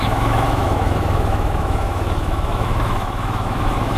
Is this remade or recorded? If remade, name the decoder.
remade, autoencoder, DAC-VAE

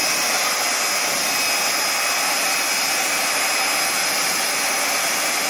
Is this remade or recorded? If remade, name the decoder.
recorded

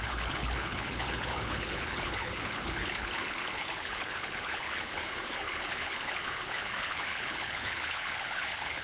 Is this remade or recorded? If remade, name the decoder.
remade, codec, HILCodec